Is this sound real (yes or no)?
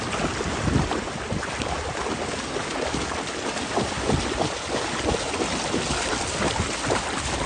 yes